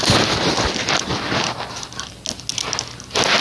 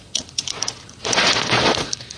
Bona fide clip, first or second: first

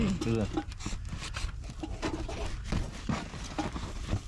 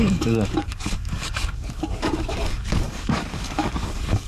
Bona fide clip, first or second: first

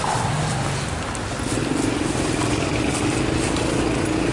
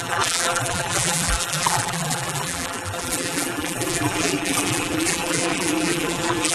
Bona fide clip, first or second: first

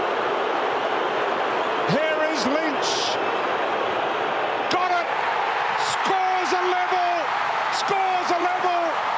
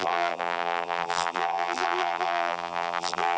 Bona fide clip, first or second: first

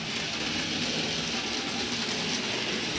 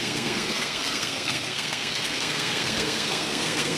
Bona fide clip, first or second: first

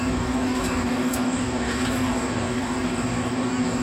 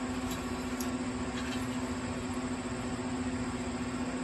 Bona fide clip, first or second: second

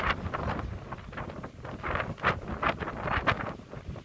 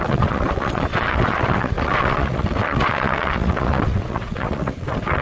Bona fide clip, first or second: first